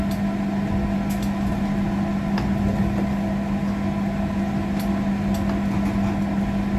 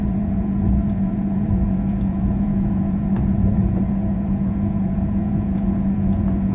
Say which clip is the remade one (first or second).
second